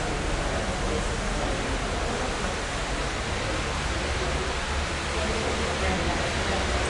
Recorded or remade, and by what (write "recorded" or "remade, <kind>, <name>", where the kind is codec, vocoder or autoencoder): recorded